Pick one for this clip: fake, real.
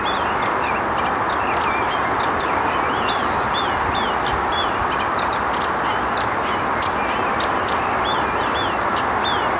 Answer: real